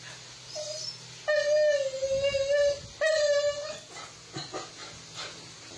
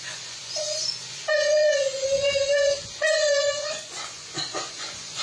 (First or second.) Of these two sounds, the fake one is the second